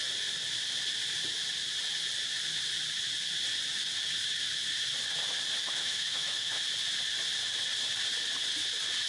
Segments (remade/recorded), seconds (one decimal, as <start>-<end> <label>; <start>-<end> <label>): 0.0-5.6 recorded; 5.6-6.6 remade; 6.6-9.1 recorded